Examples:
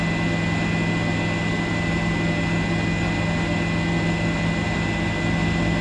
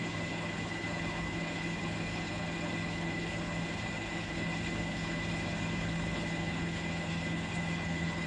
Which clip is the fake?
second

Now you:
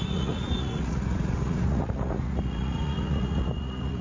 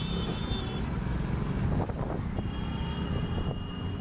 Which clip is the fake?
first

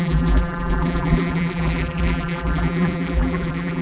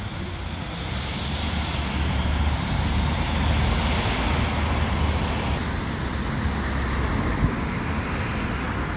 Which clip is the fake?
first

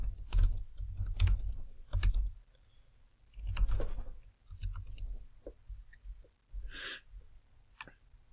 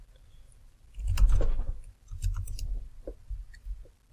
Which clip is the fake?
second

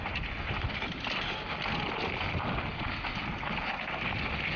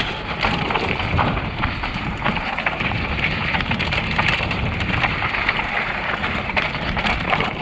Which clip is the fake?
second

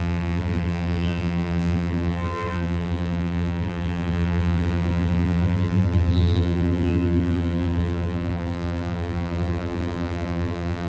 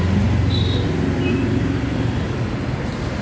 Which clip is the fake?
first